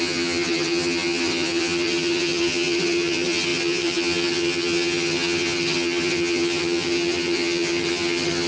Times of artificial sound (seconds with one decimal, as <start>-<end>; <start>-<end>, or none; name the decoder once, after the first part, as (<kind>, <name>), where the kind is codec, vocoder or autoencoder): 0.0-8.5 (vocoder, HiFi-GAN)